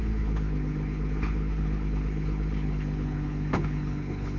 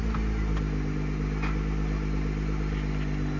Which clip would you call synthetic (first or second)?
first